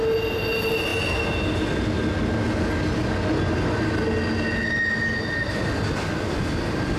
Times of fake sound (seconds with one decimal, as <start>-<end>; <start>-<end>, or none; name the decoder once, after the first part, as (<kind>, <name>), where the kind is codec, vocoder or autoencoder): none